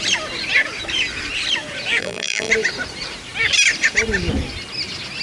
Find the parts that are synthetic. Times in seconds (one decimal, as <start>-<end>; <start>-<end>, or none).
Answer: 2.0-2.5

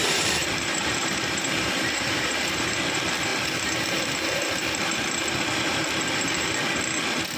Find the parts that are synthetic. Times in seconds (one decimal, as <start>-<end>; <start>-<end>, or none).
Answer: 0.0-2.7

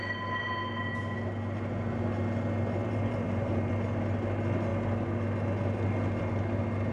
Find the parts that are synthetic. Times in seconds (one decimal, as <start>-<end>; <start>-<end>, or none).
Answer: 2.8-3.7